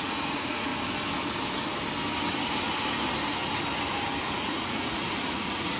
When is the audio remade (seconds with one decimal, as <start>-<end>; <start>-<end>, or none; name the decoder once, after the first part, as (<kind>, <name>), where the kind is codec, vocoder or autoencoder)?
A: 0.0-0.7 (vocoder, Vocos); 4.2-5.8